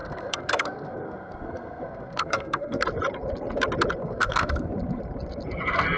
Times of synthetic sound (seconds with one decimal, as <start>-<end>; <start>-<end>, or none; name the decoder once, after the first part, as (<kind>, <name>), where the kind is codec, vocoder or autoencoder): 0.0-2.8 (codec, SNAC); 4.0-4.7